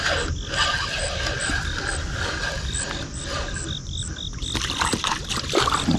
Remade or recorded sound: recorded